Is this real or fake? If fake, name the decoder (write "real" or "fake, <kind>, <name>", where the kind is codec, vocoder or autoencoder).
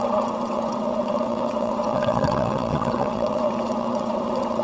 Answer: fake, vocoder, WaveNeXt